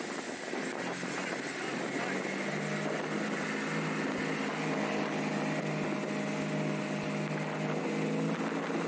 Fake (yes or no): no